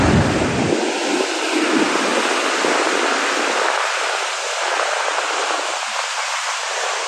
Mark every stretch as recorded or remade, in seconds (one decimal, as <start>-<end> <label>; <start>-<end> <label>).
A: 0.0-7.1 recorded